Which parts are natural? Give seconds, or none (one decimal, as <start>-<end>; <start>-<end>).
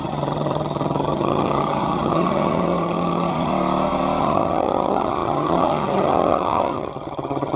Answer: 3.5-4.2